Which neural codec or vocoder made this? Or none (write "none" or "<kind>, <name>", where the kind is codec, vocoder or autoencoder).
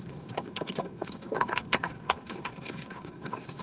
codec, SNAC